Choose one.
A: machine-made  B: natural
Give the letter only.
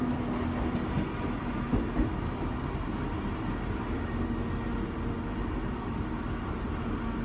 B